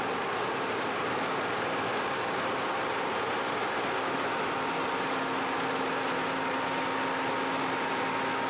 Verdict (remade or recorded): recorded